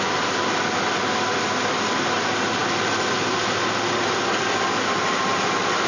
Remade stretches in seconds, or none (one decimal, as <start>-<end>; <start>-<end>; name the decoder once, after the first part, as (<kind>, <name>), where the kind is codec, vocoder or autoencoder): none